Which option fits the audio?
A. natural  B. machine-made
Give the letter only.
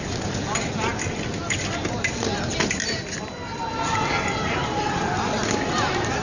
A